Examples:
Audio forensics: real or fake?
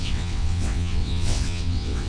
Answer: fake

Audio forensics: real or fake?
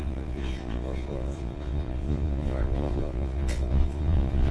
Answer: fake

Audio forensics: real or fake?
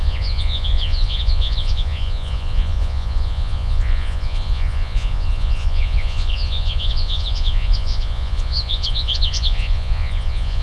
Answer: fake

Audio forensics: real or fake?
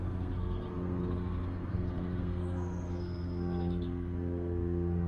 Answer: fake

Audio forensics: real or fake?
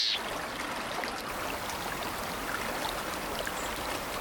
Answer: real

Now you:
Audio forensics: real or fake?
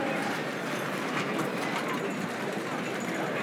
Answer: real